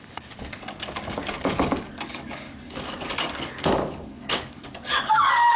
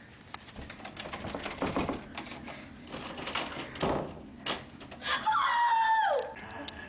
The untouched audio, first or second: second